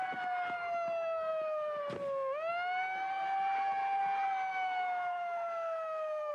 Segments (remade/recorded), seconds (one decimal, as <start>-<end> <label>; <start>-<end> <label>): 0.0-1.3 recorded; 1.3-1.8 remade; 1.8-4.5 recorded; 4.5-6.3 remade